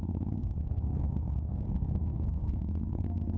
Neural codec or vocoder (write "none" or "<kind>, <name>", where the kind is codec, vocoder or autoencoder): codec, SNAC